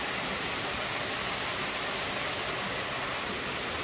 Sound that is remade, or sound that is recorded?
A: recorded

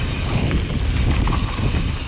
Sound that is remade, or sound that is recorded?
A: recorded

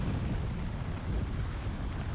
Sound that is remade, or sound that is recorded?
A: recorded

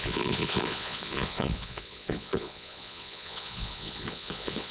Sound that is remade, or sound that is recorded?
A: remade